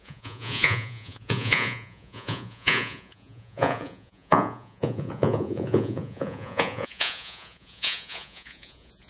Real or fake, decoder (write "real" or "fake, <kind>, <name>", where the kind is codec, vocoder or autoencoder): fake, vocoder, Vocos